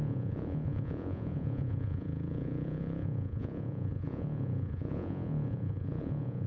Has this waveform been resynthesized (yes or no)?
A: yes